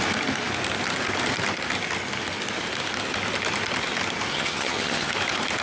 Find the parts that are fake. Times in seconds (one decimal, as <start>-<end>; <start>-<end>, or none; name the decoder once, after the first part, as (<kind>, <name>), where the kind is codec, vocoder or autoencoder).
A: 4.3-5.1 (vocoder, HiFi-GAN)